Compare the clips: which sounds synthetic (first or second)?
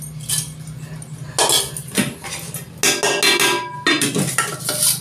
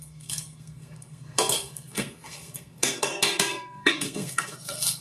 second